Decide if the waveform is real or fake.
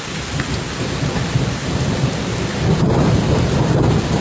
real